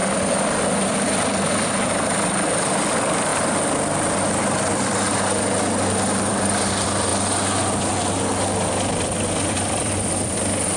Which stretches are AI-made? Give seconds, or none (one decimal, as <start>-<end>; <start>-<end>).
0.0-7.1; 9.4-10.8